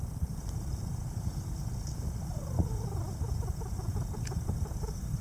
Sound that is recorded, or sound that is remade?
recorded